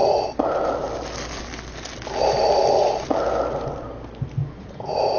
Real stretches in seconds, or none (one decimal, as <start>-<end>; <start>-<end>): 0.0-4.4